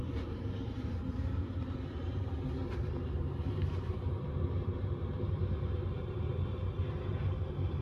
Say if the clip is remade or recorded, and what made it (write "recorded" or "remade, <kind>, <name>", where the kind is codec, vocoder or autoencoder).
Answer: remade, vocoder, BigVGAN v2